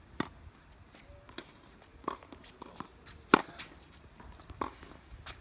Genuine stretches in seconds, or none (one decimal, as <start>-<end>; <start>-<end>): 0.0-5.4